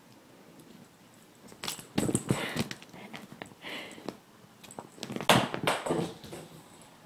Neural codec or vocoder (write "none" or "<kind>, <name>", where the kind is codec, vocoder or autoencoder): none